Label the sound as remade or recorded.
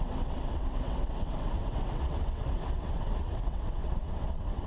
remade